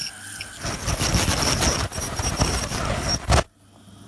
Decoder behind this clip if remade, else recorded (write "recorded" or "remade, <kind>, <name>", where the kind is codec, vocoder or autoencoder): recorded